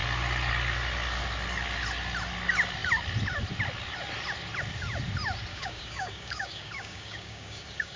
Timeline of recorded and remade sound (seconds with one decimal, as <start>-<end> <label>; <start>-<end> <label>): 0.0-5.5 recorded; 5.5-8.0 remade